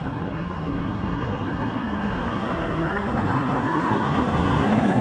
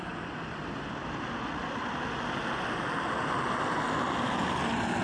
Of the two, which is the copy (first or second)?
first